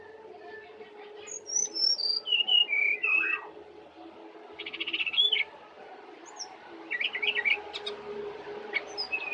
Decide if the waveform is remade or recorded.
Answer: recorded